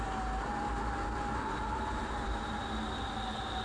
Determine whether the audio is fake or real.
real